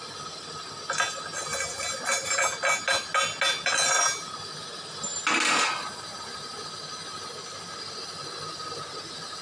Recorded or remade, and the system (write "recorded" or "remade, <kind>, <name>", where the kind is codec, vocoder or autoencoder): recorded